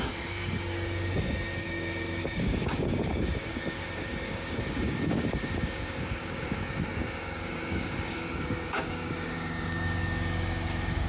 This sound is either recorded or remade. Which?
remade